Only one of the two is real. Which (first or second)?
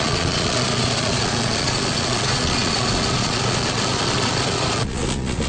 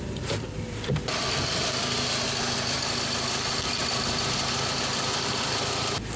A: second